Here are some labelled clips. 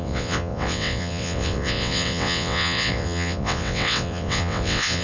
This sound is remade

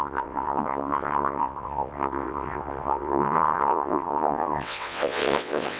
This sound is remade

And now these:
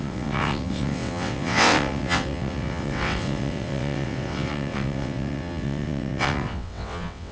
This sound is remade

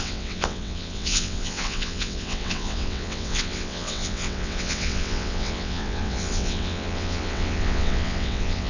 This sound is remade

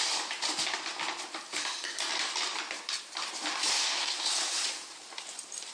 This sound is recorded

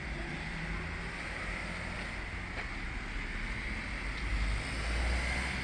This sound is recorded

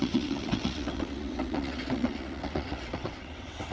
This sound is remade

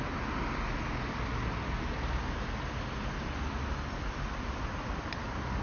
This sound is recorded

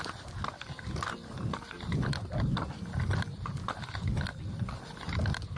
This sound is recorded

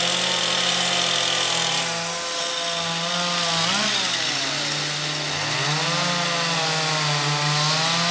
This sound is recorded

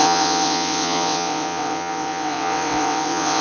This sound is remade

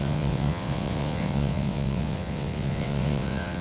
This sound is remade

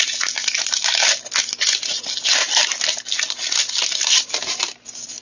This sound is recorded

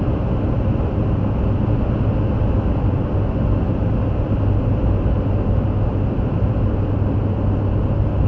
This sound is recorded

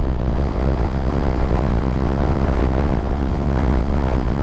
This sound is remade